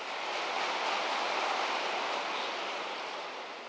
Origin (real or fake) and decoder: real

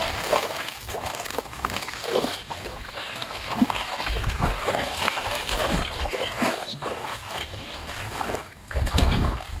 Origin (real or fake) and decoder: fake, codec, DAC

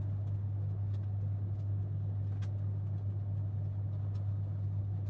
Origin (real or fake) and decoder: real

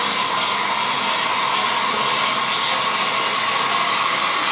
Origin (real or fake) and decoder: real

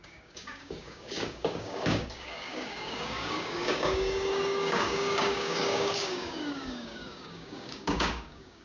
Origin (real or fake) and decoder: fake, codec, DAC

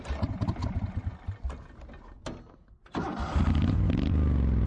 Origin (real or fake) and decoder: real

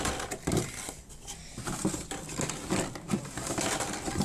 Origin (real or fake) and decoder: real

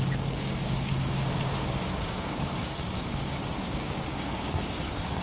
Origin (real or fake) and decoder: fake, codec, DAC